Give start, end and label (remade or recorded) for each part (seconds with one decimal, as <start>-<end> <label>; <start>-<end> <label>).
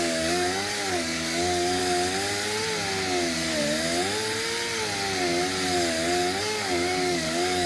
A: 0.0-1.8 remade; 1.8-6.4 recorded; 6.4-7.7 remade